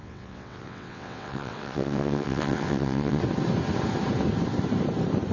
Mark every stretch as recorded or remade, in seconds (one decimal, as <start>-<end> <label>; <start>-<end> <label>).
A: 0.0-3.2 remade; 3.2-5.3 recorded